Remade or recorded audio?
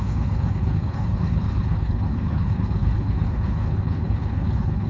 remade